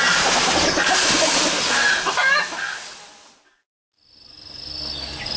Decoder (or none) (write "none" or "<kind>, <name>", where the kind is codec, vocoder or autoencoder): none